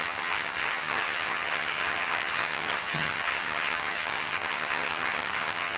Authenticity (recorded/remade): remade